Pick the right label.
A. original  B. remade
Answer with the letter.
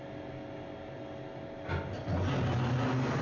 A